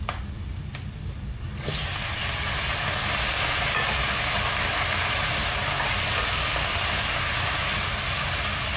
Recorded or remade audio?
recorded